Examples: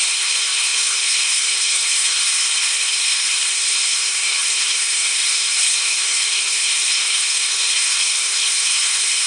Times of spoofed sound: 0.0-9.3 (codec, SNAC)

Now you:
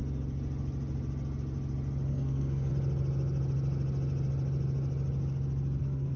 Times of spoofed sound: 2.1-2.7 (codec, SNAC); 5.8-6.2